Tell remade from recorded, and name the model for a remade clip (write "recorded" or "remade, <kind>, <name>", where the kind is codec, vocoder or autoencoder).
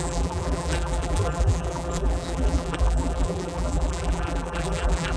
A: remade, vocoder, BigVGAN v2